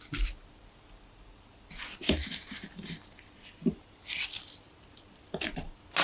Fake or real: real